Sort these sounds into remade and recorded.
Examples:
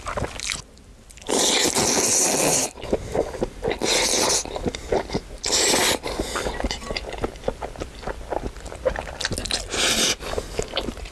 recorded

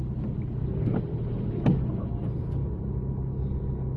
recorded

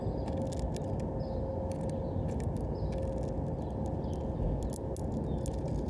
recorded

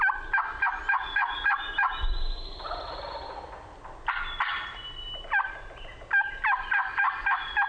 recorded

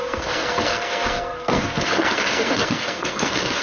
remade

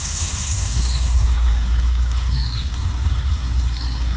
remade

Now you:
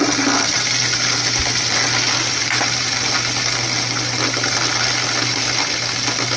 recorded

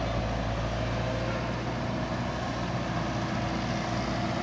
recorded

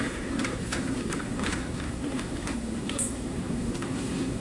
remade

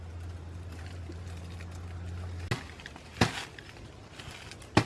recorded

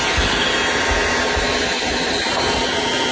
recorded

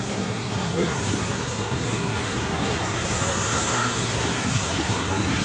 remade